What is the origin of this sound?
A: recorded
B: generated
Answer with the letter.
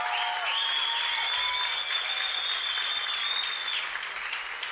A